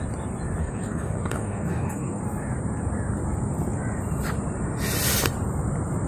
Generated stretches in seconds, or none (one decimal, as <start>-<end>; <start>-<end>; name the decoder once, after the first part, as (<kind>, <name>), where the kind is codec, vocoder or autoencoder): 0.6-2.2 (codec, DAC)